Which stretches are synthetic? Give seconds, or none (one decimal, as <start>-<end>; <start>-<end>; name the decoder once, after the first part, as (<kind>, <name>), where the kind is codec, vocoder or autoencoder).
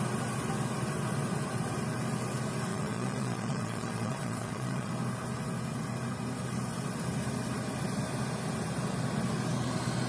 2.7-4.9 (vocoder, Vocos)